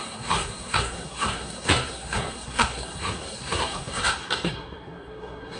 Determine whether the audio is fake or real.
fake